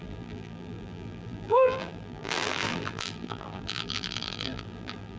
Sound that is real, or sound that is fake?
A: fake